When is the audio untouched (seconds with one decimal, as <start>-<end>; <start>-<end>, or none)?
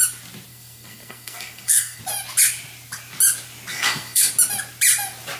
0.0-0.5; 2.0-3.7; 4.3-5.4